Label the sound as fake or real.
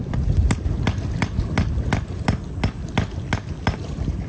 real